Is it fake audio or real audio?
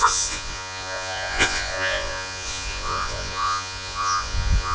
fake